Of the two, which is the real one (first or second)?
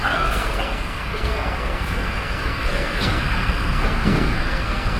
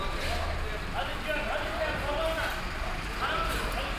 second